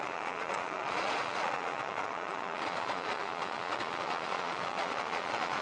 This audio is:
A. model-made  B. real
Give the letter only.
A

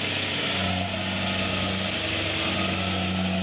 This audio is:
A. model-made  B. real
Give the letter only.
B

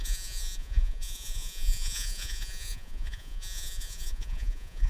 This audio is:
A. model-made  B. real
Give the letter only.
A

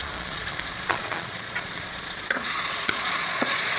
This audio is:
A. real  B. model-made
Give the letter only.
B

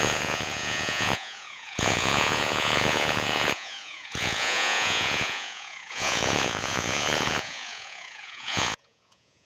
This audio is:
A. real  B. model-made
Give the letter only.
B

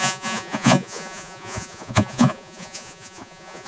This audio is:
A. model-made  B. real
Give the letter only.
A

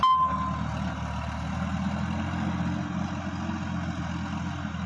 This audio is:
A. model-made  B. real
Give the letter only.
B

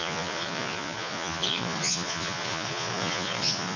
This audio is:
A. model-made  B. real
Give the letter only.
A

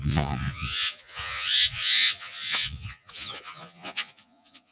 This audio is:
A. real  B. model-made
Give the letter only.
B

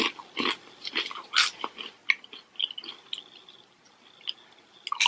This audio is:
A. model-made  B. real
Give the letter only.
B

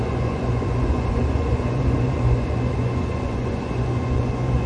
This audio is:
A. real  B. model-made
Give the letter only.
B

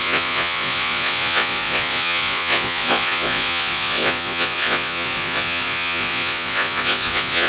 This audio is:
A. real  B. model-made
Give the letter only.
B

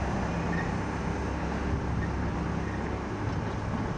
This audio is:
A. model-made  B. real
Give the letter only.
B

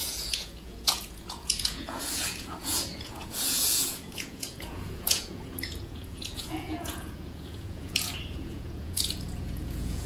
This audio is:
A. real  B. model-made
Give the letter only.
B